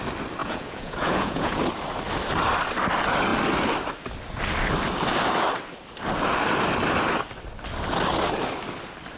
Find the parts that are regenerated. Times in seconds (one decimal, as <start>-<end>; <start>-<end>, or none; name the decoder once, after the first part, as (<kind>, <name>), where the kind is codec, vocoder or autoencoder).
0.4-1.6 (vocoder, Vocos)